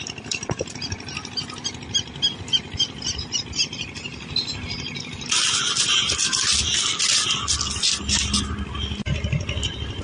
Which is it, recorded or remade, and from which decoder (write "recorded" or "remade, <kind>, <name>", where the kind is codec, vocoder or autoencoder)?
recorded